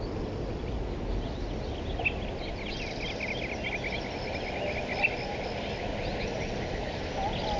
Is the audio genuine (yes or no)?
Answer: yes